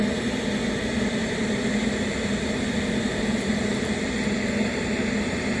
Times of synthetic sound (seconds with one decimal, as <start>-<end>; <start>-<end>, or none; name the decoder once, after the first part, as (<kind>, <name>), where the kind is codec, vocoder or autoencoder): 1.2-4.1 (vocoder, BigVGAN v2)